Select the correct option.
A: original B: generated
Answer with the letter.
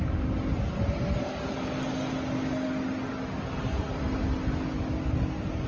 A